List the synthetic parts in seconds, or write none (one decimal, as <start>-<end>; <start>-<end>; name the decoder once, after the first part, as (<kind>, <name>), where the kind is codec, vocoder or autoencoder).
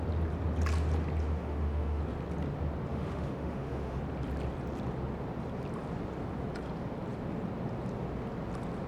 1.2-2.0 (autoencoder, DAC-VAE); 2.9-4.0